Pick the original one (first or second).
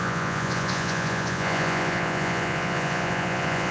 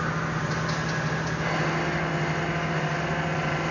second